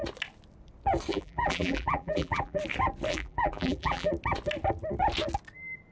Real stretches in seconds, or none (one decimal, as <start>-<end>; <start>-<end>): 0.0-1.1; 2.6-3.1; 4.1-5.9